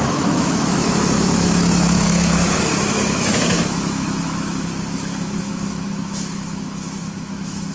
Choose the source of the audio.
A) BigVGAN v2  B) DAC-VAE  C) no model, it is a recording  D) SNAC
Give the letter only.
B